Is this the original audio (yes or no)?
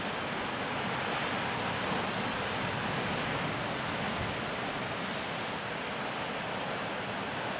yes